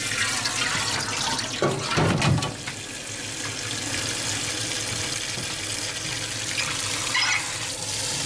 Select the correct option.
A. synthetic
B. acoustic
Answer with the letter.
B